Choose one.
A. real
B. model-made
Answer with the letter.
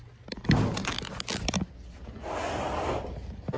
A